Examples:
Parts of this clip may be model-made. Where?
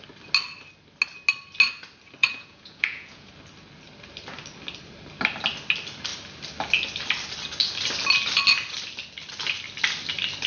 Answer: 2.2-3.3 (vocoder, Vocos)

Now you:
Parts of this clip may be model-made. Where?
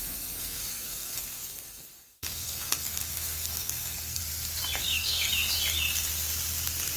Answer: 0.0-4.2 (codec, SNAC); 4.8-5.3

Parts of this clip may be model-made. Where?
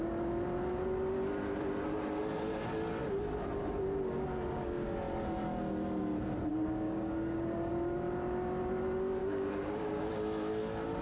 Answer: 6.5-7.7 (codec, DAC); 9.2-10.1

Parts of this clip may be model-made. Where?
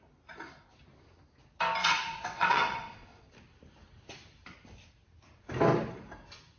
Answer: 1.8-3.3 (vocoder, WaveNeXt)